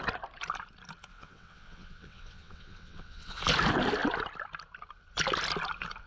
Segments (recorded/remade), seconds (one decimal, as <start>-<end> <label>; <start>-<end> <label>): 0.0-1.1 recorded; 1.1-3.4 remade; 3.4-6.1 recorded